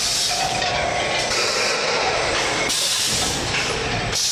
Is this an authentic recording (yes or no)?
no